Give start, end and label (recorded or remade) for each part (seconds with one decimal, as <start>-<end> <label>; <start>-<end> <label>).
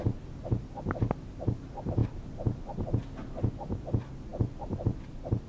0.0-5.5 recorded